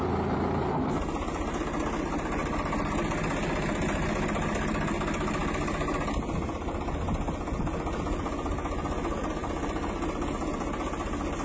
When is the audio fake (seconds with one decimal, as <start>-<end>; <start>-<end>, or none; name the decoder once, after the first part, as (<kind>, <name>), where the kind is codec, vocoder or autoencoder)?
none